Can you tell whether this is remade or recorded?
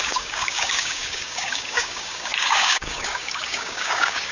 remade